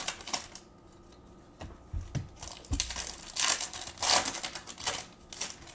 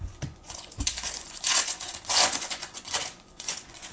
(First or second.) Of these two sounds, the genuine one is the first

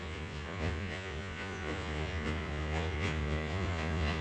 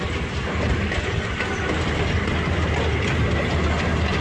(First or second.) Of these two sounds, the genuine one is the second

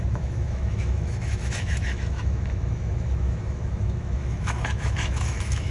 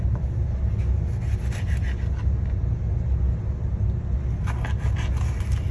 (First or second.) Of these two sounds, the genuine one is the second